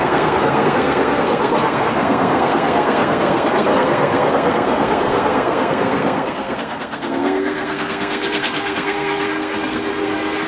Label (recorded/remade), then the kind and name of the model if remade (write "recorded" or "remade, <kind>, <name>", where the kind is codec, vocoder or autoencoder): remade, codec, SNAC